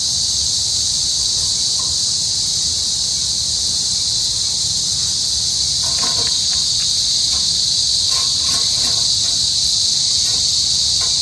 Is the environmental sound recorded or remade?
recorded